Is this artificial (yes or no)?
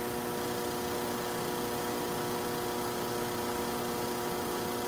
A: no